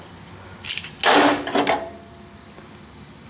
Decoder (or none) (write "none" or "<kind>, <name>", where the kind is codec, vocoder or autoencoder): none